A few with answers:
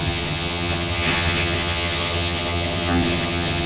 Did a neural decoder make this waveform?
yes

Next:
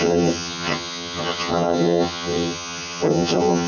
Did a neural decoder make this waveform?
yes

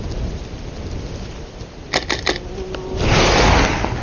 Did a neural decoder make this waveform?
no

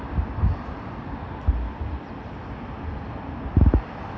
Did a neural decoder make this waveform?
no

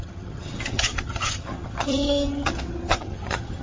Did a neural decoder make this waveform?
yes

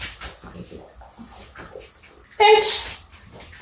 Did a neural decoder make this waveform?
no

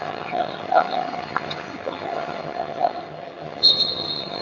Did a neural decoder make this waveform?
yes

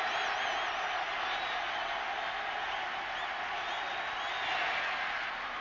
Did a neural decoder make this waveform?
no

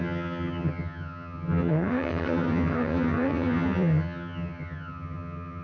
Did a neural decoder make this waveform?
yes